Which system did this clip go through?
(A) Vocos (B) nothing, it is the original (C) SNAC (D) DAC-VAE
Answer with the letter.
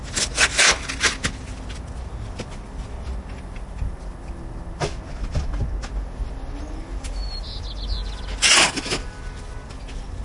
B